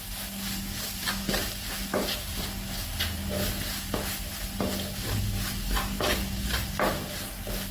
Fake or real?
real